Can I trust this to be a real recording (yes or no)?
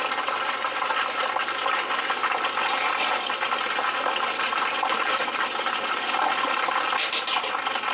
no